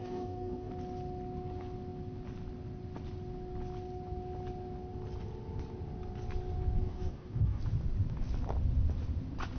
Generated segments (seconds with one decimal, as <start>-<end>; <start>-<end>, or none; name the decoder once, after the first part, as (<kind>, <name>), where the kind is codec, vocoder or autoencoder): 0.0-0.7 (codec, DAC); 6.8-7.6